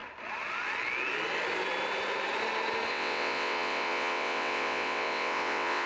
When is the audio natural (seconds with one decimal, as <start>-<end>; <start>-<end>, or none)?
0.0-2.9